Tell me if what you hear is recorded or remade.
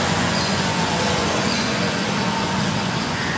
remade